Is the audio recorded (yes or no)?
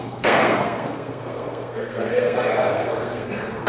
no